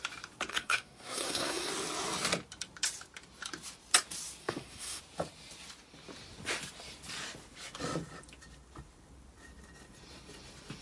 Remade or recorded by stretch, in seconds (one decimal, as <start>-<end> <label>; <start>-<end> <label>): 0.0-0.5 recorded; 0.5-1.7 remade; 1.7-4.4 recorded; 4.4-5.0 remade; 5.0-10.8 recorded